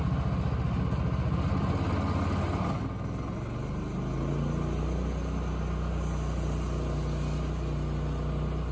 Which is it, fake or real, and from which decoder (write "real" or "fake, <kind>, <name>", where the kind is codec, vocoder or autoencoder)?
real